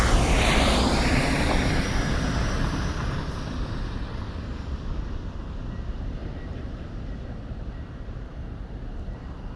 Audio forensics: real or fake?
fake